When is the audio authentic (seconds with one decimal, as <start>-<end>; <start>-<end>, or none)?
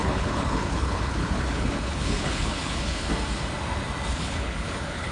3.1-4.1